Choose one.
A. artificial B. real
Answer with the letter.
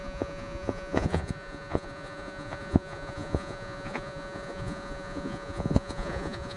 A